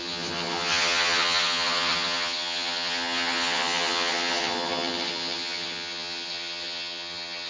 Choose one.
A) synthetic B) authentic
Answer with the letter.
A